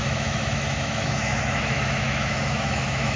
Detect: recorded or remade remade